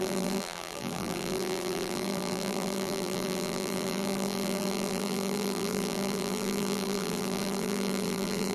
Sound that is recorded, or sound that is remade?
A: remade